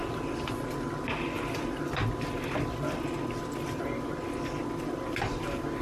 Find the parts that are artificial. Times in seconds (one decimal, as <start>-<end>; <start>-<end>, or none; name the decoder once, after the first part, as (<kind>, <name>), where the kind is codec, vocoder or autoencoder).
none

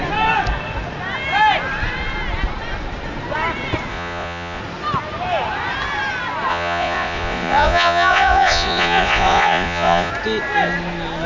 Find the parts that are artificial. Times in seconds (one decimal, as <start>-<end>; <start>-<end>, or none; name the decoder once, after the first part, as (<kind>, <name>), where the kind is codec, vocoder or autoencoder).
3.9-4.6 (vocoder, Vocos); 6.5-10.1

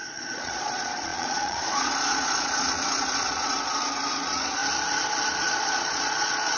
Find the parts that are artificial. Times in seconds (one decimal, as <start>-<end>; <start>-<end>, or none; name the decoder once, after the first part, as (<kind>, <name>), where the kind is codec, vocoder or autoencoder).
0.0-4.6 (vocoder, Vocos); 5.4-6.6

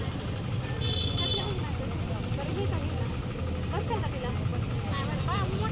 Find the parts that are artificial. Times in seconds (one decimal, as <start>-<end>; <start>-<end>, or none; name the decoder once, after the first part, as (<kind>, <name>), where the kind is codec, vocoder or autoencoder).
none